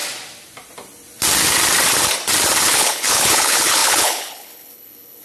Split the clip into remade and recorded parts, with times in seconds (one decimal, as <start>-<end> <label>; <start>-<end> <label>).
0.0-2.6 recorded; 2.6-5.2 remade